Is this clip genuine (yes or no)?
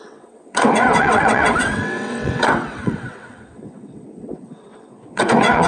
no